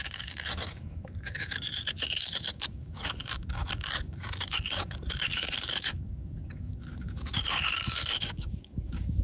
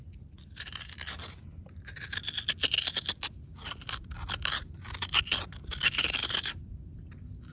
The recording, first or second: second